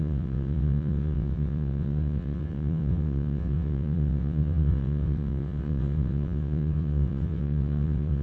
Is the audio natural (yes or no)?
no